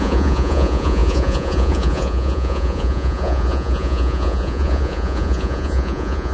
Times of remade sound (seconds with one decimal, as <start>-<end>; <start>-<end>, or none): 0.0-6.3